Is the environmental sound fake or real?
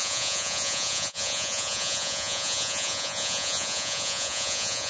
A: fake